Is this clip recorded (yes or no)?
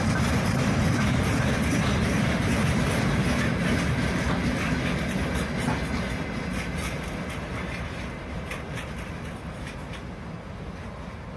yes